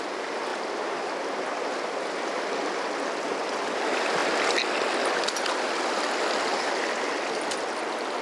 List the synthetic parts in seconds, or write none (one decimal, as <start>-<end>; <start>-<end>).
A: 0.0-0.5; 3.7-4.2; 5.5-6.5